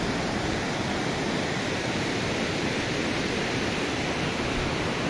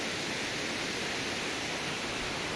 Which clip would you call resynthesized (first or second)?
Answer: first